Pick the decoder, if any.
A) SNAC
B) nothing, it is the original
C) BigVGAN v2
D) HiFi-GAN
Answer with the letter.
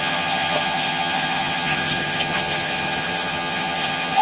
D